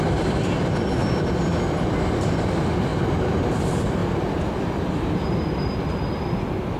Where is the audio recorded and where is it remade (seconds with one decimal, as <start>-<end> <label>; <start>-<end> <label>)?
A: 0.0-1.0 remade; 1.0-2.2 recorded; 2.2-2.9 remade; 2.9-3.4 recorded; 3.4-4.0 remade; 4.0-4.5 recorded; 4.5-6.8 remade